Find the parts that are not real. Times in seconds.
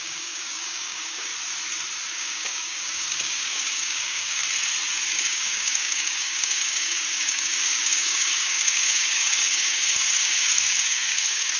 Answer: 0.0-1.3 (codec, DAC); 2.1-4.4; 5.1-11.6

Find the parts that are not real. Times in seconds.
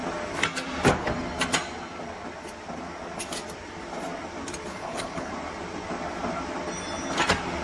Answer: 4.7-5.3 (codec, HILCodec)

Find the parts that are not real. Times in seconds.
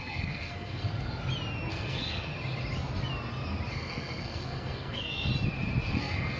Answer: 0.0-0.9 (codec, SNAC); 1.7-2.3; 3.7-5.3; 5.9-6.4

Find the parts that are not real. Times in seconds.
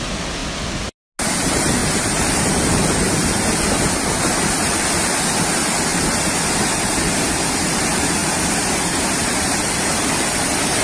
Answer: 1.8-3.3 (vocoder, BigVGAN v2); 8.2-10.2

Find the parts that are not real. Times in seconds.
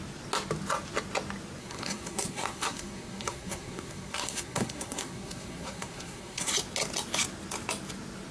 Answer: 1.6-6.5 (codec, SNAC)